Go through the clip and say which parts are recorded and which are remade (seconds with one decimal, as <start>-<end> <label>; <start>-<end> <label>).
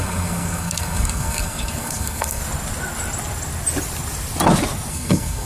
0.0-2.4 remade; 2.4-4.9 recorded; 4.9-5.5 remade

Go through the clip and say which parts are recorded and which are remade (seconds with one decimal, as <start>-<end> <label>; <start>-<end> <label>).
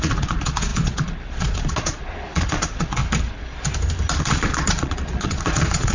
0.0-3.0 remade; 3.0-4.2 recorded; 4.2-5.9 remade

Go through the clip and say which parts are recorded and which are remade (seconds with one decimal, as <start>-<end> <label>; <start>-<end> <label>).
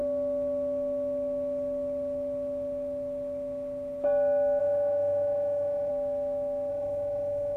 0.0-4.6 recorded; 4.6-5.9 remade; 5.9-6.7 recorded; 6.7-7.6 remade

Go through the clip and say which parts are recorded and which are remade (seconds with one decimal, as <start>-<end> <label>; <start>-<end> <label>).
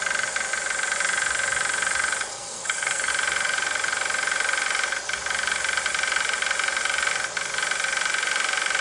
0.0-2.3 recorded; 2.3-3.1 remade; 3.1-8.8 recorded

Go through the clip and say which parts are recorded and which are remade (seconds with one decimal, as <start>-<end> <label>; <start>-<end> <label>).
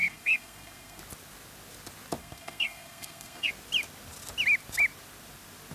0.0-1.0 remade; 1.0-2.2 recorded; 2.2-3.5 remade; 3.5-5.7 recorded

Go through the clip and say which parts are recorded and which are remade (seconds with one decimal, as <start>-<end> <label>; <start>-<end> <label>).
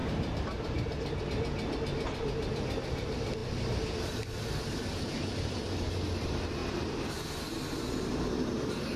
0.0-1.2 remade; 1.2-9.0 recorded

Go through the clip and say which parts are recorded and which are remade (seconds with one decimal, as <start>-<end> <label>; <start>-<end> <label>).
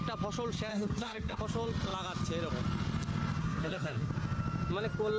0.0-0.7 recorded; 0.7-1.4 remade; 1.4-3.4 recorded; 3.4-4.1 remade; 4.1-5.2 recorded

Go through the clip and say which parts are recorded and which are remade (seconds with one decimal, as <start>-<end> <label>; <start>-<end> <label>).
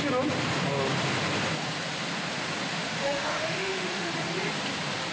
0.0-2.7 recorded; 2.7-4.1 remade; 4.1-5.1 recorded